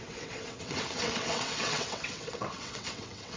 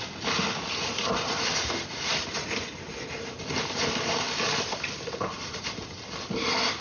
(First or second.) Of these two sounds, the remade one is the first